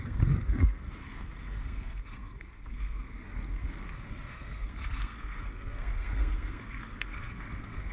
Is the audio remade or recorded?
remade